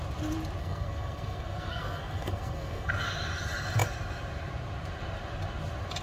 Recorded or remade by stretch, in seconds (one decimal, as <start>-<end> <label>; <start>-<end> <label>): 0.0-0.6 recorded; 0.6-2.9 remade; 2.9-6.0 recorded